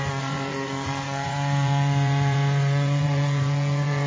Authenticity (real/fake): fake